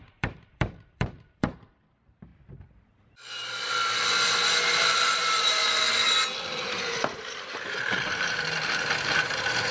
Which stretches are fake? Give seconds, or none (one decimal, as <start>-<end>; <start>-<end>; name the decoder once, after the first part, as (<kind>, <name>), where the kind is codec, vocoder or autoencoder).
0.0-2.3 (vocoder, BigVGAN v2); 4.9-5.6; 6.5-9.7